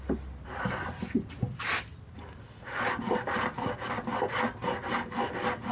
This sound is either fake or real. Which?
real